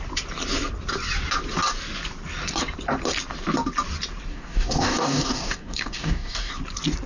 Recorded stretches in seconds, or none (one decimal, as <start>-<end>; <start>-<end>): 0.0-4.3; 6.5-7.1